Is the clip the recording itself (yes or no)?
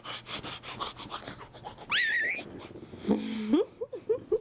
yes